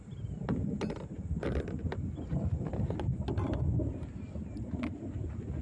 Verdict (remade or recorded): recorded